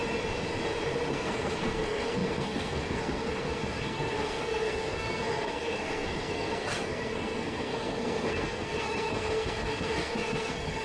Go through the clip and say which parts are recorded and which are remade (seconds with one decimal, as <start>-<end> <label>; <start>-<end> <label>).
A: 0.0-1.1 recorded; 1.1-10.8 remade